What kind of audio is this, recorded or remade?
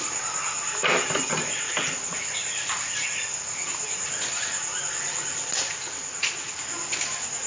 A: recorded